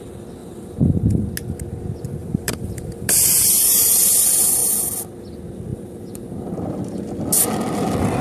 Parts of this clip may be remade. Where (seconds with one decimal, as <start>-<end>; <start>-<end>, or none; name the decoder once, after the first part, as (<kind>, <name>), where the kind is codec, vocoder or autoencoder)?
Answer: 0.4-1.0 (vocoder, BigVGAN v2); 2.2-3.9; 5.7-7.0